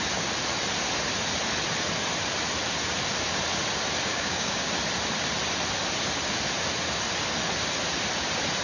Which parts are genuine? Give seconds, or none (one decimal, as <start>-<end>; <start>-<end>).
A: 0.0-4.1; 4.7-8.6